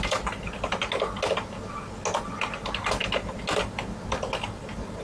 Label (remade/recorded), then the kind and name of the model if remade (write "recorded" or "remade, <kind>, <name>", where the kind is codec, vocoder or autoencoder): recorded